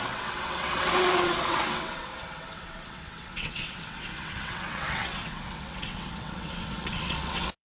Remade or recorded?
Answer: remade